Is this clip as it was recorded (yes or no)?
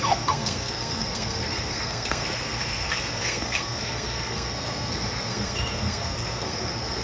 no